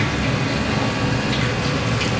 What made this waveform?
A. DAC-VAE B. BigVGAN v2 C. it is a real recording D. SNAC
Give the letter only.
C